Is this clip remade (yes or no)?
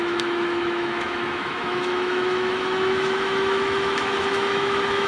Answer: yes